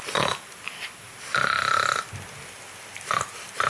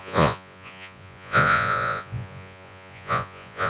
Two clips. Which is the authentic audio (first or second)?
first